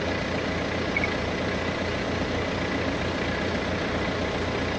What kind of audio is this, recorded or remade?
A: recorded